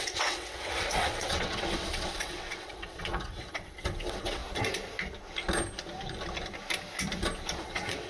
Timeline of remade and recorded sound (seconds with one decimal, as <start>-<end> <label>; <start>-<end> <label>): 0.0-4.4 remade; 4.4-7.6 recorded; 7.6-8.1 remade